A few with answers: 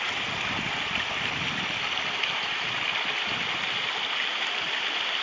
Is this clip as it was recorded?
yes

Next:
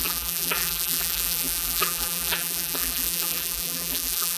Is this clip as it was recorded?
no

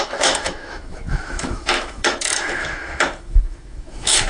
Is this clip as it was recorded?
no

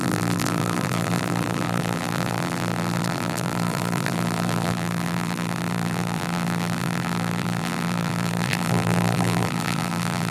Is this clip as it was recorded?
no